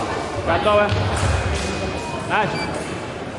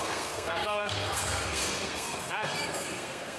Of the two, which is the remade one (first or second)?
second